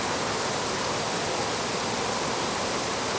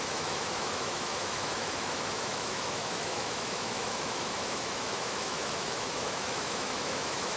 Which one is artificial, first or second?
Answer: second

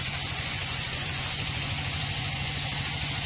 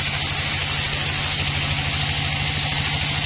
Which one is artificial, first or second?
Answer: first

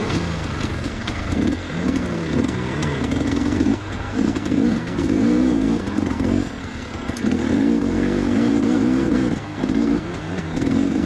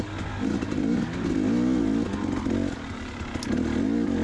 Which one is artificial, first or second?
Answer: first